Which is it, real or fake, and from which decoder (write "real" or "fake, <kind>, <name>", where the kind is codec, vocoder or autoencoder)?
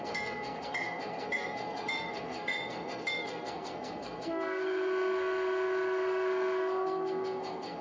fake, codec, SNAC